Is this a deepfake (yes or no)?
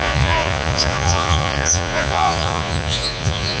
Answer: yes